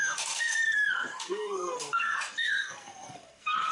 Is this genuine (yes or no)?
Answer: no